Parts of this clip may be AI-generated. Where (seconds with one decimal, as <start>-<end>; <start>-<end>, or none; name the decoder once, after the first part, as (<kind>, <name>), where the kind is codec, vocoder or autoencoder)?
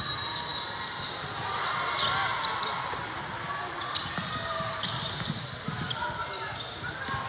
none